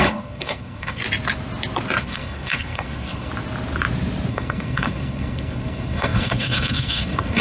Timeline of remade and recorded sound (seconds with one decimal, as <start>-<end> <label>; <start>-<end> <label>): 0.0-1.0 remade; 1.0-2.0 recorded; 2.0-3.3 remade; 3.3-4.3 recorded; 4.3-7.4 remade

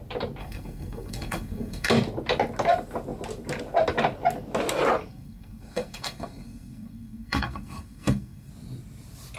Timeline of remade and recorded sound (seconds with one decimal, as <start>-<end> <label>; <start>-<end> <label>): 0.0-0.4 recorded; 0.4-1.9 remade; 1.9-5.1 recorded; 5.1-8.5 remade; 8.5-9.4 recorded

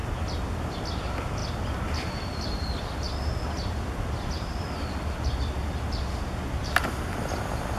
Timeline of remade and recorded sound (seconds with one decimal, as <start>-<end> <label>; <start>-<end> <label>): 0.0-1.4 recorded; 1.4-4.9 remade; 4.9-7.8 recorded

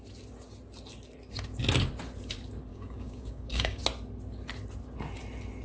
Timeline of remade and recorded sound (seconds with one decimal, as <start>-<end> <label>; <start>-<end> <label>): 0.0-2.7 recorded; 2.7-3.8 remade; 3.8-5.6 recorded

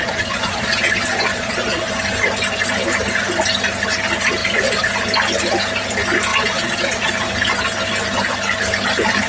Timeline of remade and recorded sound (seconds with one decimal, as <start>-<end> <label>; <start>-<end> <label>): 0.0-2.0 remade; 2.0-4.4 recorded; 4.4-4.9 remade; 4.9-6.3 recorded; 6.3-7.1 remade; 7.1-9.3 recorded

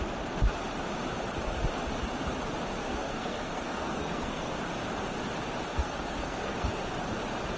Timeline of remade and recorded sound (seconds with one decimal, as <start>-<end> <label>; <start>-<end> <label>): 0.0-2.8 recorded; 2.8-4.6 remade; 4.6-5.7 recorded; 5.7-6.7 remade; 6.7-7.6 recorded